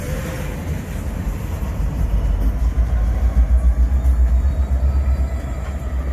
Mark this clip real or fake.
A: fake